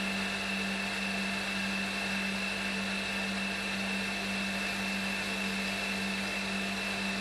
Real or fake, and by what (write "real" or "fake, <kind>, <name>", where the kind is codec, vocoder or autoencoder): real